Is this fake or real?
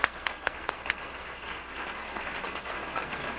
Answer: fake